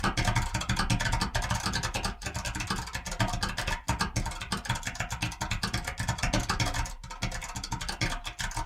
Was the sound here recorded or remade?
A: recorded